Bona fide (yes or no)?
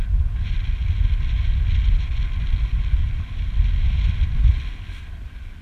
yes